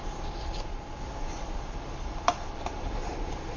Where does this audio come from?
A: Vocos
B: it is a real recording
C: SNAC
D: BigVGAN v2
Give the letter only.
D